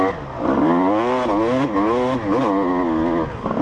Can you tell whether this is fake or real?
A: real